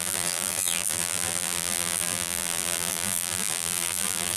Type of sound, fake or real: fake